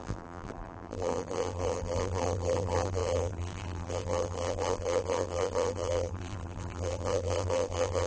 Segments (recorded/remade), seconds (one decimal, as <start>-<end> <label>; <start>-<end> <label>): 0.0-8.1 remade